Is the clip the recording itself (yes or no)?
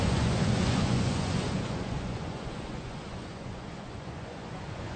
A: no